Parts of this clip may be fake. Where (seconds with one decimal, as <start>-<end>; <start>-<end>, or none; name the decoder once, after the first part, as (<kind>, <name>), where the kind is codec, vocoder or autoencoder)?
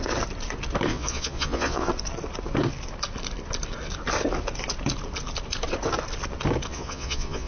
0.9-1.9 (vocoder, Vocos); 6.7-7.5